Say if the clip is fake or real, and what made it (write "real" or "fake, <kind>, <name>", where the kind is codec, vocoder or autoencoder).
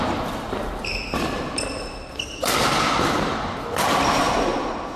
real